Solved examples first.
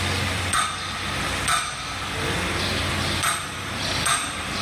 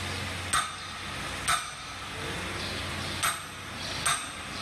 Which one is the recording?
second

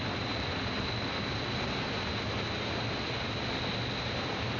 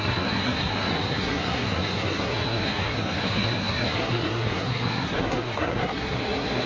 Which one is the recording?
first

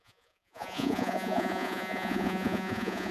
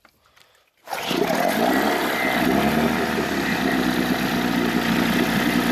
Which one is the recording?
second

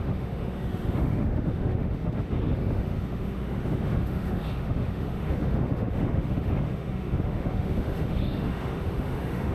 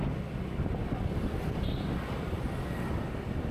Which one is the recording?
second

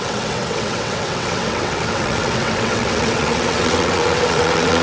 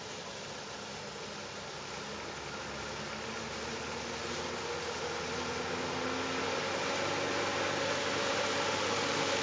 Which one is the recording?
second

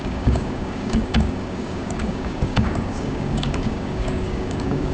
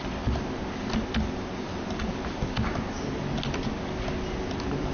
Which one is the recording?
second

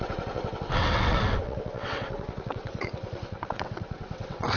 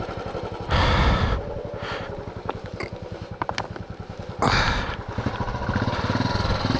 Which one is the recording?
second